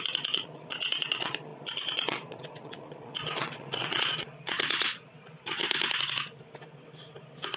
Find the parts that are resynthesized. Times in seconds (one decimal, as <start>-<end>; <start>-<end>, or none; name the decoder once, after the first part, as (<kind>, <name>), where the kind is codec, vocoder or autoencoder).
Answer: 0.0-5.6 (vocoder, Vocos)